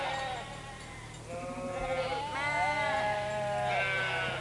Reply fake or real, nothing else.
real